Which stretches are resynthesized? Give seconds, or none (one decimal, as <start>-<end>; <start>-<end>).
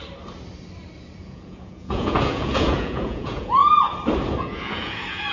1.2-3.6; 4.4-5.3